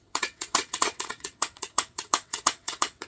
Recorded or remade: remade